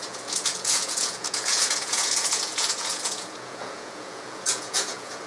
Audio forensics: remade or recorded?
remade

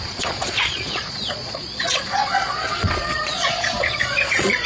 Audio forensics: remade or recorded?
remade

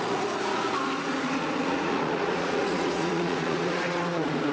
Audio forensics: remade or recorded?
remade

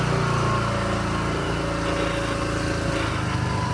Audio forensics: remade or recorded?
recorded